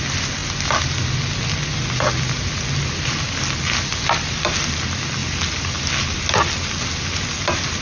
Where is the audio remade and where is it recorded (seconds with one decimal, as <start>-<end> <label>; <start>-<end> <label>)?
0.0-7.8 recorded